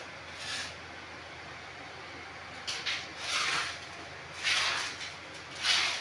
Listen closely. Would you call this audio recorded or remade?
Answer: recorded